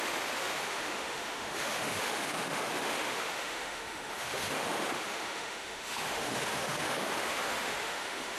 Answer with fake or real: fake